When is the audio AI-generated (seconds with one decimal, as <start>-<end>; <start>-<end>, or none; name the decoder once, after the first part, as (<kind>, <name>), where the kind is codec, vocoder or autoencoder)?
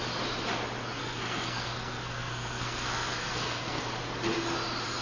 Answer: 1.0-3.8 (codec, SNAC)